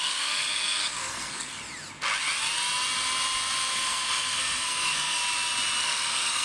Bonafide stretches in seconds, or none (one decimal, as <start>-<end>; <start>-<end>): 1.6-3.7; 5.2-5.8